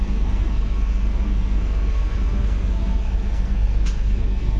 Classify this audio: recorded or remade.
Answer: remade